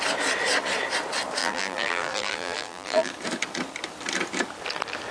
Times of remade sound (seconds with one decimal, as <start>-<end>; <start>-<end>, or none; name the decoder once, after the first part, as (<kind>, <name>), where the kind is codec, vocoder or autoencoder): 1.4-3.1 (vocoder, BigVGAN v2)

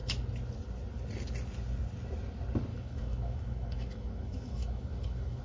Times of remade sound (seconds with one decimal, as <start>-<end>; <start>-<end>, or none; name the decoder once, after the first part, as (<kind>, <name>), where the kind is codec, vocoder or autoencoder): 2.7-5.4 (autoencoder, DAC-VAE)

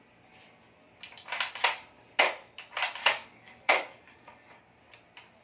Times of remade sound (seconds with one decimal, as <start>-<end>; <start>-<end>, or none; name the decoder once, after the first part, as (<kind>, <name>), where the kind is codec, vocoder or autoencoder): 3.0-4.6 (codec, DAC)

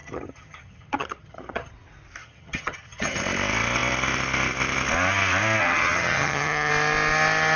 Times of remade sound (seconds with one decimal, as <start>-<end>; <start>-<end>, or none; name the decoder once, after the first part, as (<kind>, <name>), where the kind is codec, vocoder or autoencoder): 0.0-1.7 (vocoder, HiFi-GAN); 2.2-3.2; 5.6-6.7

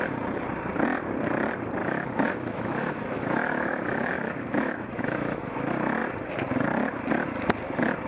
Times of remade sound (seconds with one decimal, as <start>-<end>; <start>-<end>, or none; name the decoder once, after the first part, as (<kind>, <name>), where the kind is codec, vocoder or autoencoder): 1.8-5.6 (autoencoder, DAC-VAE)

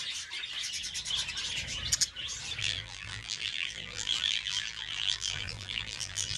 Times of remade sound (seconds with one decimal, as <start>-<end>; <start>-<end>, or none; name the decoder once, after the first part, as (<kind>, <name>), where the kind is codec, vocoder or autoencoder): 2.6-6.4 (vocoder, BigVGAN v2)